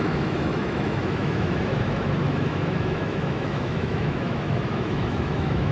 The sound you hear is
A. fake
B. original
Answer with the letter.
A